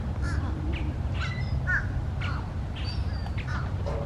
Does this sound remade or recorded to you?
recorded